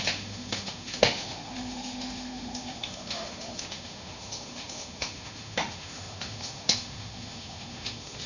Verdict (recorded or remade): remade